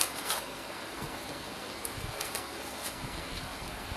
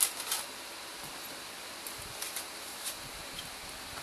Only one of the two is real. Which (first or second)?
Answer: second